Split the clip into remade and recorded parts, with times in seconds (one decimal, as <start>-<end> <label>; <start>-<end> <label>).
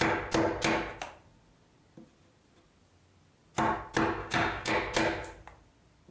0.0-4.2 recorded; 4.2-4.7 remade; 4.7-6.1 recorded